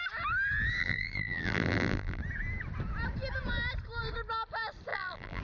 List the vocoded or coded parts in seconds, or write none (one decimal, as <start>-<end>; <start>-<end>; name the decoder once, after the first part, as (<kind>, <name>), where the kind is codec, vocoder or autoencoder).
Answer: 0.8-2.2 (vocoder, BigVGAN v2); 4.9-5.4